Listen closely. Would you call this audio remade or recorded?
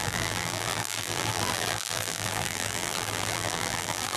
remade